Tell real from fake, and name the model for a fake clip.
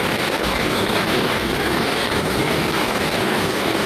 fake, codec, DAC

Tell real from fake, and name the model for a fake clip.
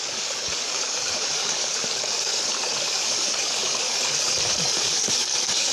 fake, codec, DAC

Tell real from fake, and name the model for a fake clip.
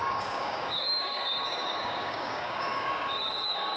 fake, codec, DAC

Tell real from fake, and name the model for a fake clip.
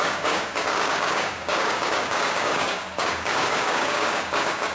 fake, codec, DAC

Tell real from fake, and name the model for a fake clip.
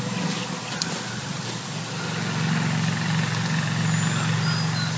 real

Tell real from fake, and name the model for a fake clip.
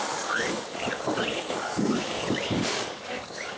fake, codec, DAC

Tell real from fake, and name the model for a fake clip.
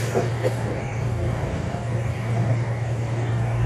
fake, codec, DAC